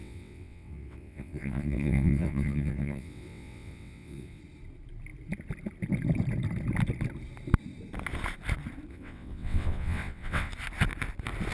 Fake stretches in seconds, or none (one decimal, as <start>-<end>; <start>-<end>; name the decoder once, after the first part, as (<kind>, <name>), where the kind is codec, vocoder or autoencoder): 0.0-4.4 (vocoder, WaveNeXt); 8.9-10.5